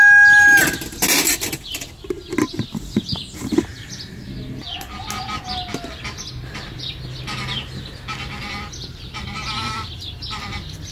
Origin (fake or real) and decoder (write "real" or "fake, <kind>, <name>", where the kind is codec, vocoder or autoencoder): real